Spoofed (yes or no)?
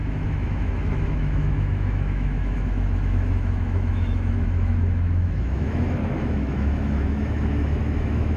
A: yes